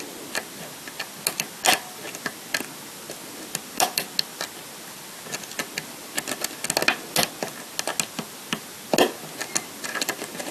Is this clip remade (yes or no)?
no